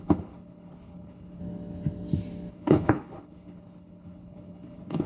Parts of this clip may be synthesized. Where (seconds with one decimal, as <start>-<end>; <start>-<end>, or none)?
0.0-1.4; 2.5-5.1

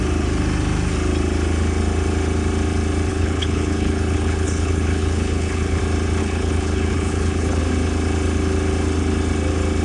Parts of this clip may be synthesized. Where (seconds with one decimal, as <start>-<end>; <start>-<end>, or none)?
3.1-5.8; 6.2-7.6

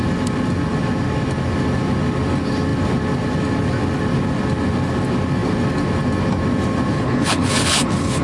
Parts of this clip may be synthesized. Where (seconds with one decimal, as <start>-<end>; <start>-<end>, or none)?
6.9-8.2

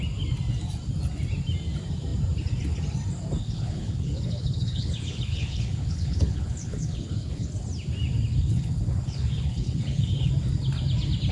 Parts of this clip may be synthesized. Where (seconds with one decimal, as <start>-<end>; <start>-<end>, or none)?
3.4-7.5; 8.3-10.3

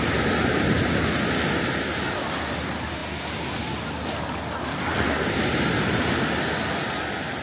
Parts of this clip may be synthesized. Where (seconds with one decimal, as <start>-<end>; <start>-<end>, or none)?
none